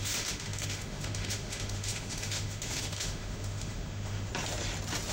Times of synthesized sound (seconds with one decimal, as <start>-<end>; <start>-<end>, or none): 0.0-4.3